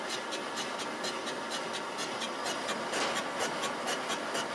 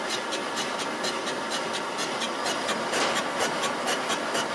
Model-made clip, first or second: second